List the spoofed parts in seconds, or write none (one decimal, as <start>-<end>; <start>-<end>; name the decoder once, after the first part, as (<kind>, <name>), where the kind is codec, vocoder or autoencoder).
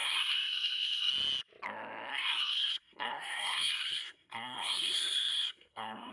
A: 0.0-1.1 (codec, SNAC); 2.1-6.1